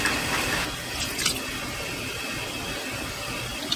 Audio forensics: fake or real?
real